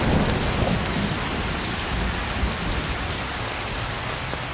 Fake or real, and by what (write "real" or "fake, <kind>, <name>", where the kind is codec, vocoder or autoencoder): real